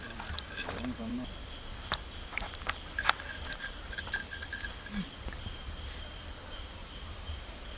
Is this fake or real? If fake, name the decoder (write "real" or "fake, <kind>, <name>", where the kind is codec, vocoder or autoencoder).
fake, vocoder, BigVGAN v2